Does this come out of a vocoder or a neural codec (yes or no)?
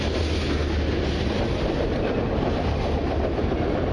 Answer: no